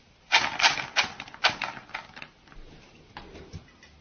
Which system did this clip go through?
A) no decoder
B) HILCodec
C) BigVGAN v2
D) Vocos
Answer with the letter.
A